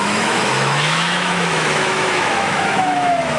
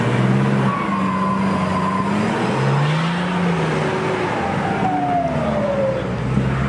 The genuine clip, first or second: second